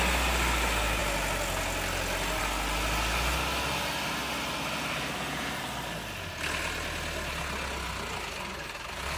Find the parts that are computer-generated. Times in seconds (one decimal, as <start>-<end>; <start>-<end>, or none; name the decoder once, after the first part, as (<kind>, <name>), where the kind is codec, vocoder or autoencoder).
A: none